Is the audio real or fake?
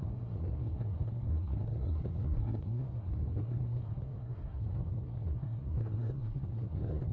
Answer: fake